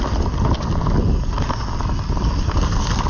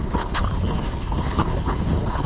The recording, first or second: first